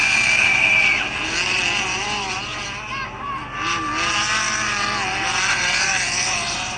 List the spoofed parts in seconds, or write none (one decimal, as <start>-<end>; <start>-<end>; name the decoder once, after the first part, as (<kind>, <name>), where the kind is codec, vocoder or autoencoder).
0.0-1.6 (vocoder, BigVGAN v2); 5.5-6.8